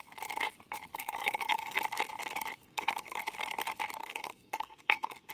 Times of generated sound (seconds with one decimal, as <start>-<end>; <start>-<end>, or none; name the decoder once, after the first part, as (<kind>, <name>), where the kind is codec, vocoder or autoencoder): 0.9-1.8 (codec, SNAC); 2.6-3.2; 4.0-5.3